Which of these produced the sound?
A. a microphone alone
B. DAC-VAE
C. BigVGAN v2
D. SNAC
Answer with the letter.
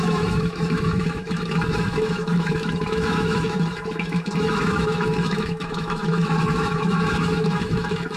B